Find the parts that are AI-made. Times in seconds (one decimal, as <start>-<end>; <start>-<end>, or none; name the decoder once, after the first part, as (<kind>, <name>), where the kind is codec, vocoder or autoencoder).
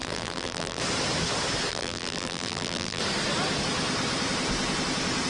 0.0-0.8 (vocoder, BigVGAN v2); 1.7-3.0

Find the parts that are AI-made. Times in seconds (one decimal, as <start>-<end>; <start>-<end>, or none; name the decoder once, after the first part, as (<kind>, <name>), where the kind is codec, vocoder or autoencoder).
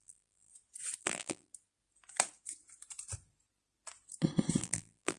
0.0-0.5 (vocoder, BigVGAN v2); 1.0-1.5; 4.6-5.2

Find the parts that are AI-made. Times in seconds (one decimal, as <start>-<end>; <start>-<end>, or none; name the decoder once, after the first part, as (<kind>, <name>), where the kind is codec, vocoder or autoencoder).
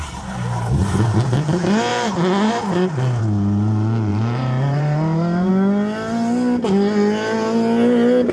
1.9-3.2 (vocoder, BigVGAN v2); 4.1-5.5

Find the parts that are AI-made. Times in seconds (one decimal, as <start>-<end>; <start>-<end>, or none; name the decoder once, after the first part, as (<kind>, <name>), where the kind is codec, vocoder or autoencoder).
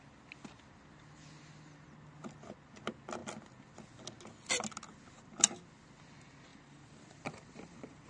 6.5-8.1 (vocoder, BigVGAN v2)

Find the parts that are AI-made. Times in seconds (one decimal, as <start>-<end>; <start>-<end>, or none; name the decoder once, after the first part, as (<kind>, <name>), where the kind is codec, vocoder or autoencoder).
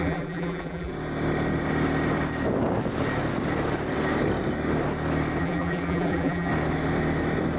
0.0-0.9 (vocoder, BigVGAN v2); 5.4-6.5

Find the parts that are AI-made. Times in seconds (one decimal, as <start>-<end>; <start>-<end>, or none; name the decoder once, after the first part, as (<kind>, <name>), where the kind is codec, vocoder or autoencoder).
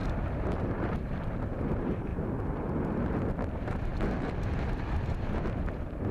0.0-2.1 (vocoder, BigVGAN v2); 3.5-3.9; 5.1-6.1